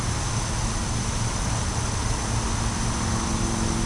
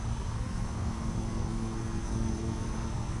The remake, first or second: second